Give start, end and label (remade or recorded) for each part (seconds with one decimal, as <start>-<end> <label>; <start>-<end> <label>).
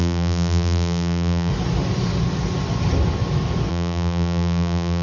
0.0-1.5 remade; 1.5-3.7 recorded; 3.7-5.0 remade